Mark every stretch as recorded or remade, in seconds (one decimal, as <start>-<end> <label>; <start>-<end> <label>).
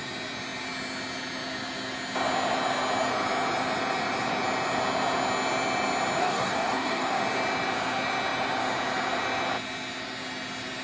0.0-6.2 recorded; 6.2-7.2 remade; 7.2-10.8 recorded